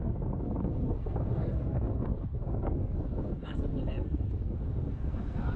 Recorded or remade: remade